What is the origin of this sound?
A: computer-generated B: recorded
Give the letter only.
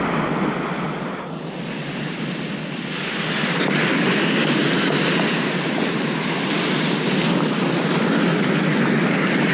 B